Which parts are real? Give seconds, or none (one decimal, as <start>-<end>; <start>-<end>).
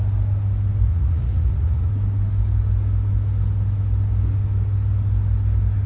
0.0-0.9; 1.9-5.9